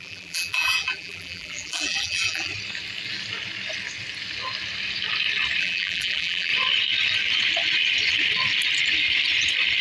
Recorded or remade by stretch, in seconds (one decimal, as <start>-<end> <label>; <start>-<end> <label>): 0.0-2.5 remade; 2.5-5.6 recorded; 5.6-6.5 remade; 6.5-9.8 recorded